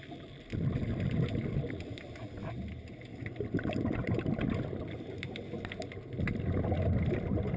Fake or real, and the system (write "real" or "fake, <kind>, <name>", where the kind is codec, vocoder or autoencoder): real